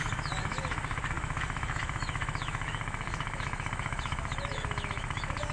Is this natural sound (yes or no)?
no